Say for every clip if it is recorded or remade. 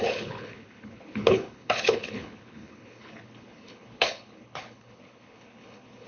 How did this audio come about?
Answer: remade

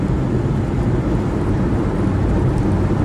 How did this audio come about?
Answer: recorded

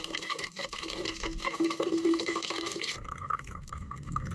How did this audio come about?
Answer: remade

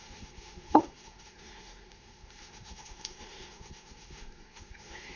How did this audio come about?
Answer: remade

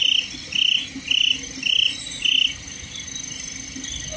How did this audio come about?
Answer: recorded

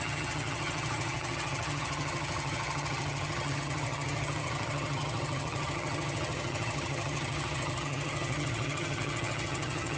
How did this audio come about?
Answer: remade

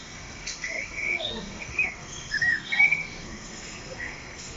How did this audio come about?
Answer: remade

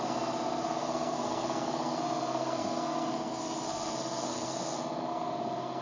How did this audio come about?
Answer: remade